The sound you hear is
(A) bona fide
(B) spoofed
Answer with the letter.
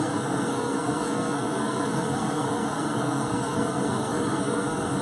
B